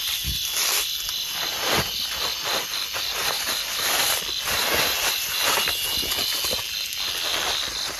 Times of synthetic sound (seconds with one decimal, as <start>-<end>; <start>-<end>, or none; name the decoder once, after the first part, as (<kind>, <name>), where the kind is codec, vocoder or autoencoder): none